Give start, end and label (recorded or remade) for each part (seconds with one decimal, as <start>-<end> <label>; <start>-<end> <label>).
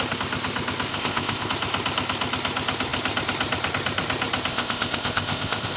0.0-0.9 recorded; 0.9-1.5 remade; 1.5-4.5 recorded; 4.5-5.8 remade